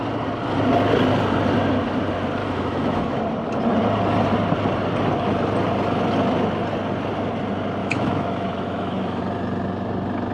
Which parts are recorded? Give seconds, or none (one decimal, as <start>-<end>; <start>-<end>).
0.0-2.4; 3.2-7.8; 9.2-10.3